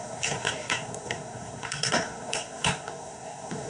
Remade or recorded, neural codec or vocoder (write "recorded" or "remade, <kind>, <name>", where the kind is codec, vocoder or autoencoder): remade, codec, SNAC